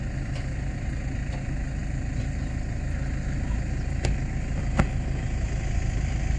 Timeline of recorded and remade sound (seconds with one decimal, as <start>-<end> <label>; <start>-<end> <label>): 0.0-6.4 recorded